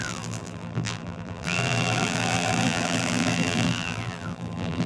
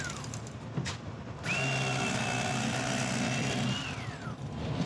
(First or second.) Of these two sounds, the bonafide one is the second